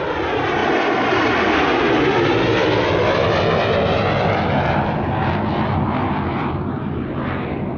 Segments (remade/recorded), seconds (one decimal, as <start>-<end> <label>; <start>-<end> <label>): 0.0-7.8 recorded